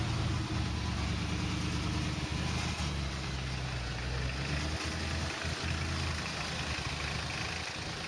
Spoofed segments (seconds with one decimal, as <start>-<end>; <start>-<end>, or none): none